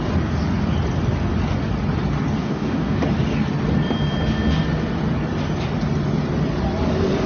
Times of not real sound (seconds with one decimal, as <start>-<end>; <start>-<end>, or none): 2.4-3.0